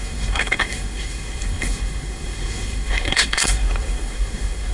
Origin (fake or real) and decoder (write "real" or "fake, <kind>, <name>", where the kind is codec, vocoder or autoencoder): fake, codec, SNAC